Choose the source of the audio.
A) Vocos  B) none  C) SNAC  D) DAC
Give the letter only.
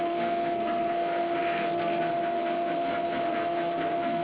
C